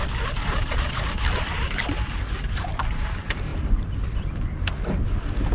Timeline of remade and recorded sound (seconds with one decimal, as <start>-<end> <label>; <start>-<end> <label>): 0.0-0.4 recorded; 0.4-1.0 remade; 1.0-5.5 recorded